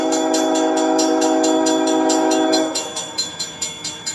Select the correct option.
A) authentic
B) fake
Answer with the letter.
B